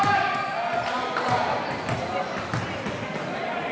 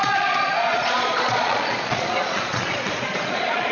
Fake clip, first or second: second